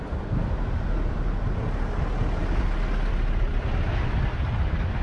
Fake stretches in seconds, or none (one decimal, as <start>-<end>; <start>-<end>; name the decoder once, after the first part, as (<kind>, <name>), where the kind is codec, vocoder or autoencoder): none